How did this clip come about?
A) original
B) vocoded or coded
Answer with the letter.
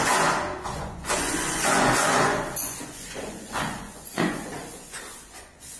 B